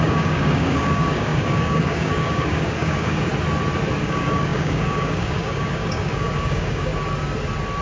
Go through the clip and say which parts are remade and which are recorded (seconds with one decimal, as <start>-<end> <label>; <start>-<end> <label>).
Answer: 0.0-3.3 remade; 3.3-4.0 recorded; 4.0-6.9 remade; 6.9-7.8 recorded